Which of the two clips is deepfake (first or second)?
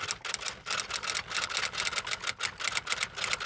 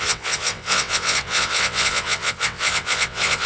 second